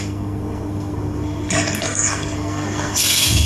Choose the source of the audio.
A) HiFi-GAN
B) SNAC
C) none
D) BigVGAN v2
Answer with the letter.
B